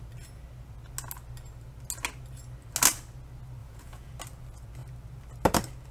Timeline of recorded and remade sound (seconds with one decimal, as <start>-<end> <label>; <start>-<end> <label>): 0.0-3.6 recorded; 3.6-4.1 remade; 4.1-5.9 recorded